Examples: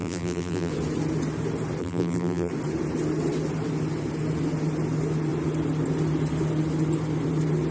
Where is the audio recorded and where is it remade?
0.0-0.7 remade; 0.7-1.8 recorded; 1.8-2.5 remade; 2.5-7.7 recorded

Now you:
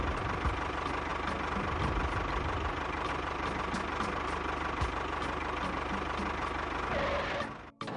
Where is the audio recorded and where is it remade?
0.0-1.1 recorded; 1.1-4.8 remade; 4.8-8.0 recorded

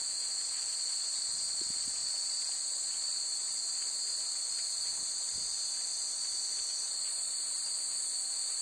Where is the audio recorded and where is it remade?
0.0-8.6 recorded

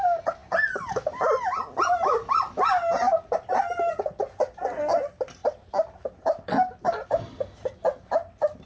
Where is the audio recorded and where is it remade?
0.0-8.7 recorded

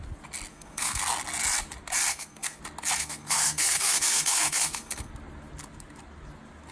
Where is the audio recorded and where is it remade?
0.0-0.5 recorded; 0.5-1.0 remade; 1.0-2.1 recorded; 2.1-2.6 remade; 2.6-3.0 recorded; 3.0-5.1 remade; 5.1-6.7 recorded

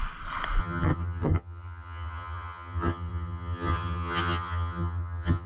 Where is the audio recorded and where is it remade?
0.0-0.6 recorded; 0.6-5.5 remade

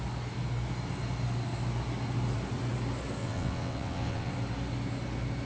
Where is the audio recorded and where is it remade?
0.0-3.2 recorded; 3.2-4.3 remade; 4.3-5.5 recorded